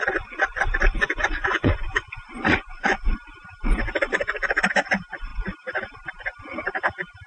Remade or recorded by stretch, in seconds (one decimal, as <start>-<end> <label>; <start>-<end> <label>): 0.0-1.4 recorded; 1.4-3.1 remade; 3.1-7.3 recorded